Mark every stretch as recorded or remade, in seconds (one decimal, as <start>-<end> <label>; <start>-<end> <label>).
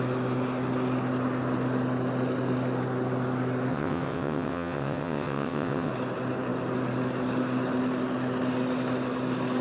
0.0-3.7 recorded; 3.7-5.9 remade; 5.9-9.6 recorded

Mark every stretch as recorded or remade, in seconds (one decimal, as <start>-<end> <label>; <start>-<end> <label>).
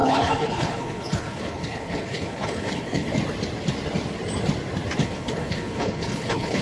0.0-3.1 remade; 3.1-5.0 recorded; 5.0-6.6 remade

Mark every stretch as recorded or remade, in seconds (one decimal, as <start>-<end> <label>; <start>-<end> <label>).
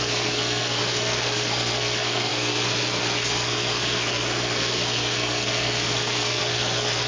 0.0-7.1 remade